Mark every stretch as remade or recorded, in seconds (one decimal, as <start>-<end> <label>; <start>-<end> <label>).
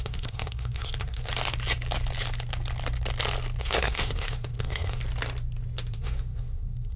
0.0-1.3 remade; 1.3-3.6 recorded; 3.6-5.0 remade; 5.0-5.9 recorded; 5.9-7.0 remade